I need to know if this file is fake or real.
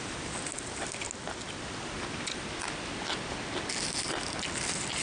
real